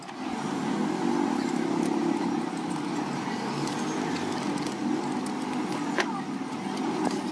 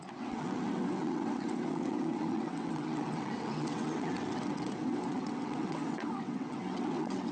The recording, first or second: first